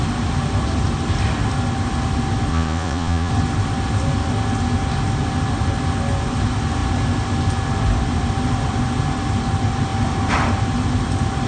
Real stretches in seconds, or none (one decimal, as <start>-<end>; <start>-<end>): 0.0-2.5; 3.3-11.5